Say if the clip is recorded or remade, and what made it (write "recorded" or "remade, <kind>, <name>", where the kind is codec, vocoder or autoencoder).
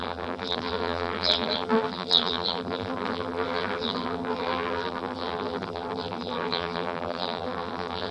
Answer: remade, vocoder, BigVGAN v2